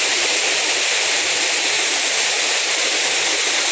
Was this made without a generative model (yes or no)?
yes